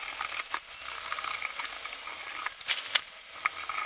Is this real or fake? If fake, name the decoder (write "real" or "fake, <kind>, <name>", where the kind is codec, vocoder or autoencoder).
real